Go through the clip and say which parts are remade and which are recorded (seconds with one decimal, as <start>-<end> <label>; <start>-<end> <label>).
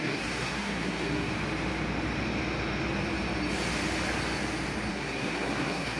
0.0-1.3 remade; 1.3-4.9 recorded; 4.9-6.0 remade